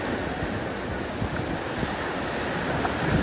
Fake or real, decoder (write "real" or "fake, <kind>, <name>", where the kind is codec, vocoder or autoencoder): real